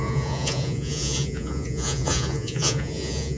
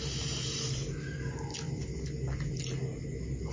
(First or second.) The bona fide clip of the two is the second